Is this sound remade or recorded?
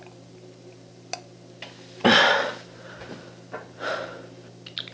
recorded